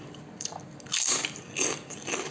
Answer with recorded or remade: recorded